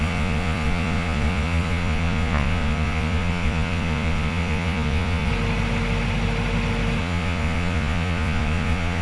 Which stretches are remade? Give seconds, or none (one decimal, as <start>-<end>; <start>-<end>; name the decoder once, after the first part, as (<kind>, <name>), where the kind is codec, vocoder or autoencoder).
0.0-5.3 (vocoder, Vocos); 7.0-9.0